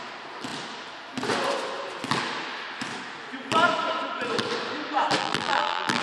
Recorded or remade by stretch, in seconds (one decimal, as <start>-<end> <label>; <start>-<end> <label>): 0.0-5.2 recorded; 5.2-6.0 remade